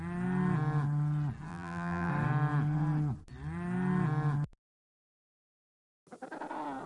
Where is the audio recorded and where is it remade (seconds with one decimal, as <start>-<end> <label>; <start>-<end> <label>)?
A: 0.0-1.5 recorded; 1.5-2.1 remade; 2.1-6.9 recorded